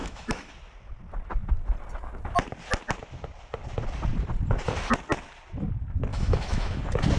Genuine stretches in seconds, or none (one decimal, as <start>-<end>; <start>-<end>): 0.5-6.1; 6.8-7.2